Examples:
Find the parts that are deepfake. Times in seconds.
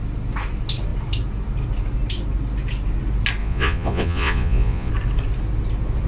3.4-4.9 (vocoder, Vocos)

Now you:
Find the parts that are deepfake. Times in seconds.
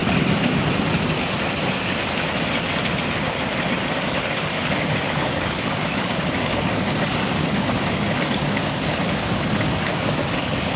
4.1-10.8 (codec, DAC)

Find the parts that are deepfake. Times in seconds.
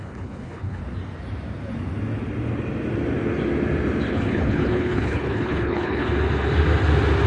0.0-0.8 (codec, HILCodec); 4.1-6.1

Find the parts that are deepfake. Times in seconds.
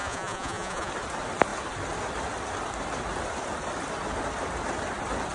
0.0-0.9 (vocoder, Vocos)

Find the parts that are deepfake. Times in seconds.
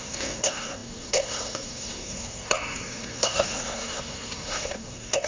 0.0-5.3 (codec, SNAC)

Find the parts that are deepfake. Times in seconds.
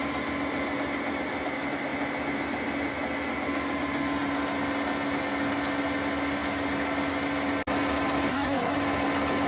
8.3-8.8 (codec, SNAC)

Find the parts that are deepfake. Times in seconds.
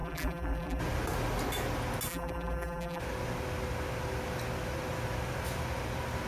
0.0-0.8 (vocoder, BigVGAN v2); 2.1-3.0